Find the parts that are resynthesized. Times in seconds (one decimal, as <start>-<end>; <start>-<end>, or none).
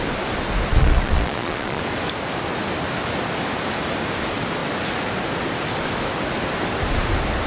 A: 0.7-1.8